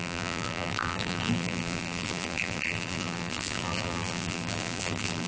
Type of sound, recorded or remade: remade